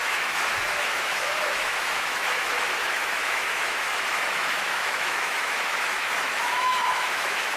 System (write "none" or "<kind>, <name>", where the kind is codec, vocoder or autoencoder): autoencoder, DAC-VAE